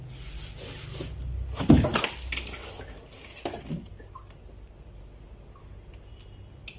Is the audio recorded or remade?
recorded